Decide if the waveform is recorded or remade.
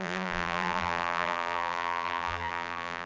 remade